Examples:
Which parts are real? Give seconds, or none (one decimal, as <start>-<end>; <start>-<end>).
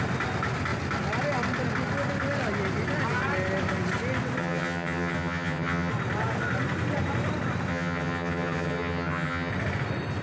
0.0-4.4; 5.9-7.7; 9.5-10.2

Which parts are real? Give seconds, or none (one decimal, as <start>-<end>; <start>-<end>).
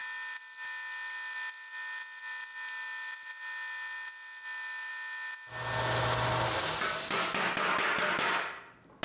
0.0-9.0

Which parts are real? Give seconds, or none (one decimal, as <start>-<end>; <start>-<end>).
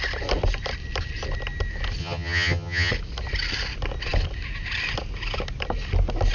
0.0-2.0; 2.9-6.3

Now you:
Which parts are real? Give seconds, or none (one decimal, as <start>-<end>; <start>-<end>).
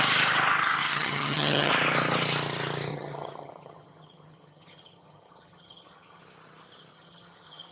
0.0-0.8; 1.7-2.9; 6.2-6.9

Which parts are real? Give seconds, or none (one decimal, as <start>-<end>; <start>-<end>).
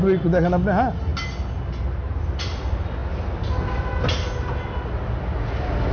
0.0-5.9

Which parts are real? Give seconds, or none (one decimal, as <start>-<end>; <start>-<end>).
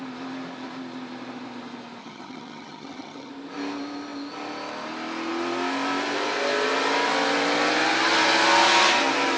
0.0-2.0; 3.3-9.4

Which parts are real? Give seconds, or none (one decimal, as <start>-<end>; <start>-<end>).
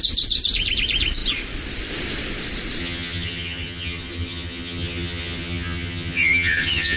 0.0-2.8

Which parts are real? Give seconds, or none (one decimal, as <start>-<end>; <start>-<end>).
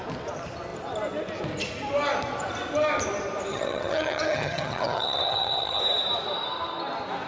0.0-3.5; 5.8-7.3